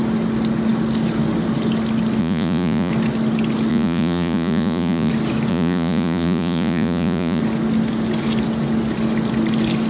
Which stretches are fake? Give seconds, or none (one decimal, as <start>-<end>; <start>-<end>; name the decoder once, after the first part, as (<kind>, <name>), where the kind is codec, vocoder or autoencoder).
2.2-2.9 (vocoder, Vocos); 3.7-5.1; 5.5-7.4